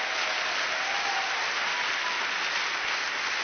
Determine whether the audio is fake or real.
real